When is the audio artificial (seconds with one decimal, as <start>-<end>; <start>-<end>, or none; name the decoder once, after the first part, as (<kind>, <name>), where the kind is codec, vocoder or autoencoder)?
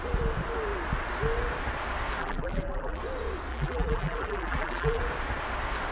2.2-3.0 (vocoder, BigVGAN v2); 3.5-5.0